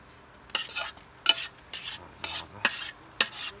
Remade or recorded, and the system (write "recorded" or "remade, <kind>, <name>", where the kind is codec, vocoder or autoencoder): recorded